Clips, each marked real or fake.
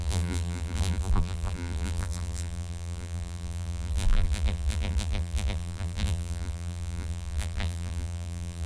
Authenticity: fake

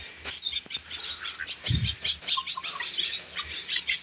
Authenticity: real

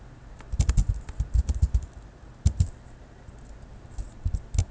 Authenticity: real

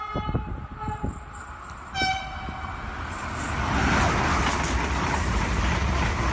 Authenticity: real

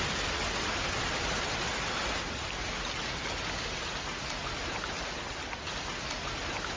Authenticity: real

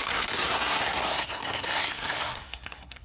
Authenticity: fake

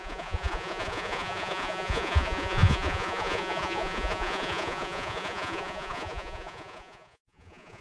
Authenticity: fake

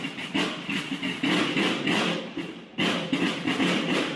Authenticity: real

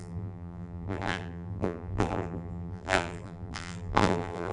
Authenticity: fake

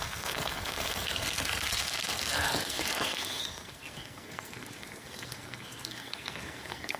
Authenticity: fake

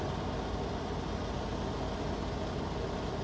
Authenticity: real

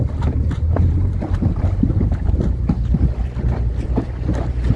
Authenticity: fake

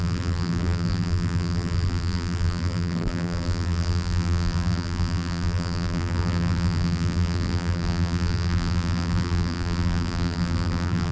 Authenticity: fake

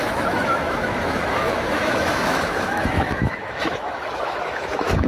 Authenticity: fake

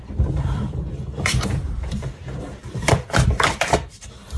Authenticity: fake